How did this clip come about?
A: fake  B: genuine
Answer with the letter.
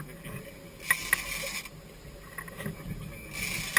B